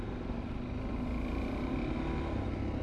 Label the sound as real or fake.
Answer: real